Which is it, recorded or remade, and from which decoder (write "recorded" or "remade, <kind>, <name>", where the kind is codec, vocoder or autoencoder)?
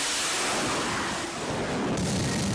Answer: recorded